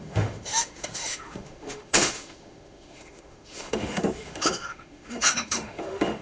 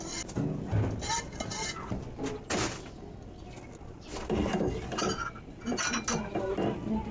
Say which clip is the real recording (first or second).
second